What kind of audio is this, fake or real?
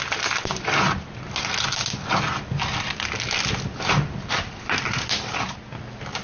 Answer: real